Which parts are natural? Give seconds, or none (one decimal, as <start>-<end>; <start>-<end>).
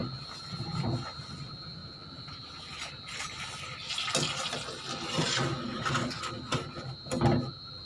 0.0-7.9